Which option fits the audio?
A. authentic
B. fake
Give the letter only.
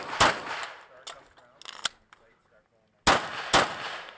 A